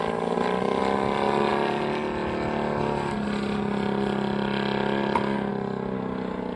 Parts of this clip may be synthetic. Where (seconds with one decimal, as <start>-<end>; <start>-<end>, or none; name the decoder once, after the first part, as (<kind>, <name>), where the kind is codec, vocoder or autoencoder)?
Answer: none